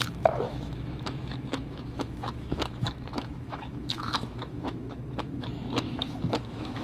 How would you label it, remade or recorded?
remade